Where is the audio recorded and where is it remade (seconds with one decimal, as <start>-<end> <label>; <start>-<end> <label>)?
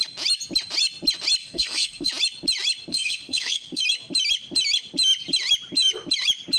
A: 0.0-1.4 recorded; 1.4-2.1 remade; 2.1-2.9 recorded; 2.9-3.8 remade; 3.8-6.6 recorded